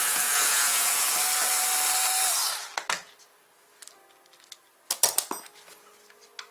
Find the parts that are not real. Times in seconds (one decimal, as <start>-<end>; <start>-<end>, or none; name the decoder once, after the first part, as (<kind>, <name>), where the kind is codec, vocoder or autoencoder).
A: 0.0-1.1 (vocoder, Vocos)